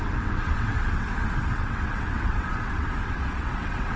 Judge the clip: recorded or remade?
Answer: remade